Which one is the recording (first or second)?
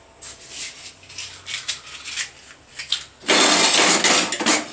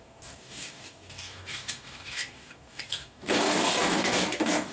first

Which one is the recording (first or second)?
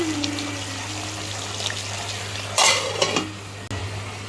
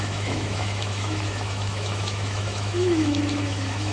first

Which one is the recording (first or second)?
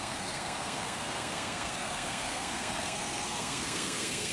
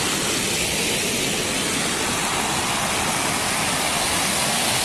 second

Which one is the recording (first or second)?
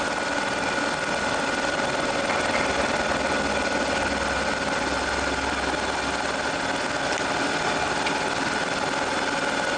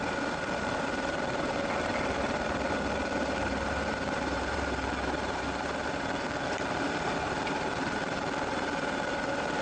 first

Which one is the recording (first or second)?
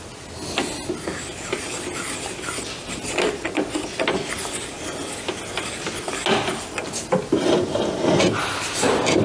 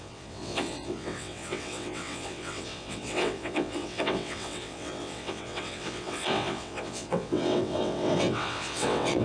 first